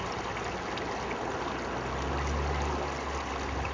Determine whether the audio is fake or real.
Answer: real